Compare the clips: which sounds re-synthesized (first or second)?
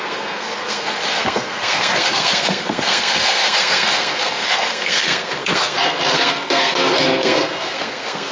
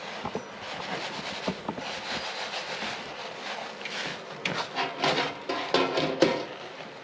first